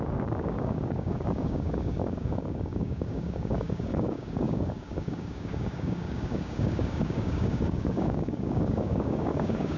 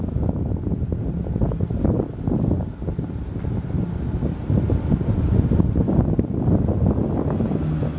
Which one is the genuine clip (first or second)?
second